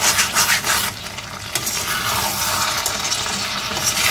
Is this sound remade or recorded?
recorded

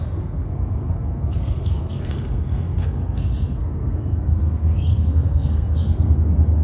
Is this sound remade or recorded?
remade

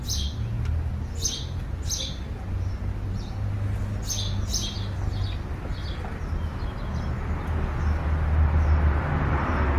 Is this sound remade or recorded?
recorded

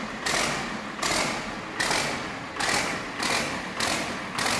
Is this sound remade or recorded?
recorded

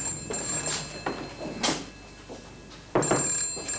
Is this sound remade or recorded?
recorded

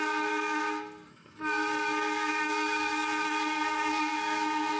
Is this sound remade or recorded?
remade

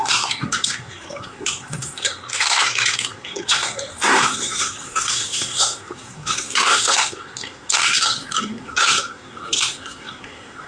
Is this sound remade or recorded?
remade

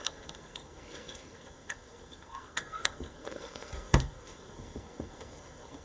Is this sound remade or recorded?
remade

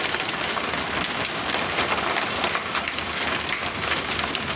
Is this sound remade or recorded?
recorded